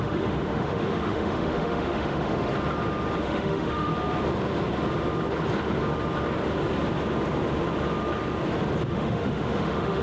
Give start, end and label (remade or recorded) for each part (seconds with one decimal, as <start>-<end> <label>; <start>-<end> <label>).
0.0-2.5 remade; 2.5-3.2 recorded; 3.2-3.9 remade; 3.9-8.9 recorded; 8.9-10.0 remade